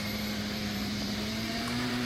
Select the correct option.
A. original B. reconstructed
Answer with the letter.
B